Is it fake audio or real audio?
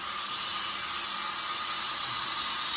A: real